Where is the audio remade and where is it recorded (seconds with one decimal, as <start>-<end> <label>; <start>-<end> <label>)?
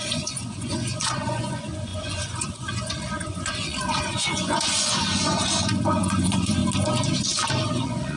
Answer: 0.0-6.6 remade; 6.6-7.7 recorded; 7.7-8.2 remade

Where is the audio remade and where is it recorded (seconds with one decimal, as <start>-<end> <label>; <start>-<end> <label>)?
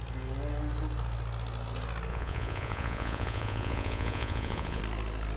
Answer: 0.0-2.1 recorded; 2.1-4.8 remade; 4.8-5.4 recorded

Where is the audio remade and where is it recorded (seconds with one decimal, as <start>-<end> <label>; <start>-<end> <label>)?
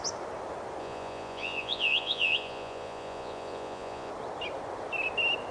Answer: 0.0-0.8 recorded; 0.8-4.1 remade; 4.1-5.5 recorded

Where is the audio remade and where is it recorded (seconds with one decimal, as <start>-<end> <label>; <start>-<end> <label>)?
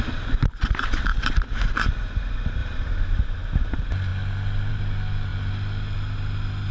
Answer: 0.0-6.7 recorded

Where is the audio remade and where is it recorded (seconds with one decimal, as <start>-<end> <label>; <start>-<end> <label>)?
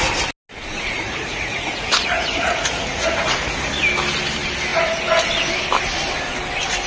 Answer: 0.0-0.6 recorded; 0.6-3.7 remade; 3.7-6.9 recorded